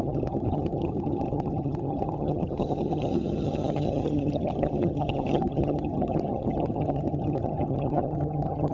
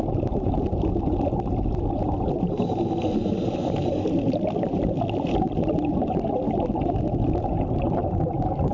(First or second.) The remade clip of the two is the first